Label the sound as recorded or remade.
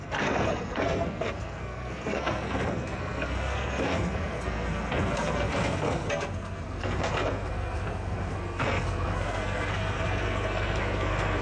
remade